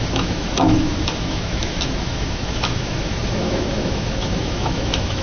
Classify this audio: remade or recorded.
remade